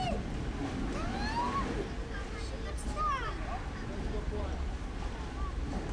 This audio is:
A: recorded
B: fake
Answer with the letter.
A